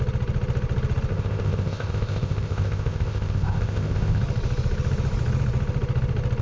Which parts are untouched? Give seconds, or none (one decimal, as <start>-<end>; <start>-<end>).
0.0-1.1; 4.2-6.4